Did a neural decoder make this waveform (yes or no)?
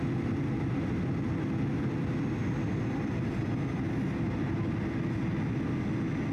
no